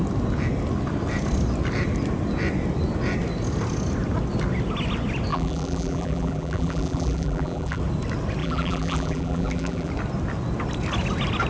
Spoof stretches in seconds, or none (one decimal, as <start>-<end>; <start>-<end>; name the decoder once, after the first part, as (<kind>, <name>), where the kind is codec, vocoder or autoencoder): 5.3-7.8 (vocoder, BigVGAN v2); 8.4-9.9